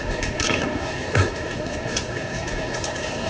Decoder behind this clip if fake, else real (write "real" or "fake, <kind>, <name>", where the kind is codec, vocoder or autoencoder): fake, codec, SNAC